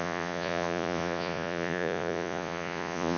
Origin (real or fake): fake